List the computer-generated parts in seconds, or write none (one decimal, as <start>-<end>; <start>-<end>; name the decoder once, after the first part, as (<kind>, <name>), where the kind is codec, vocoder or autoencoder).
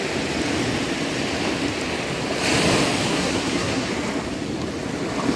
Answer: 3.1-3.9 (codec, SNAC)